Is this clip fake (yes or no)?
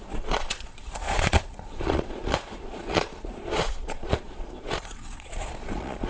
yes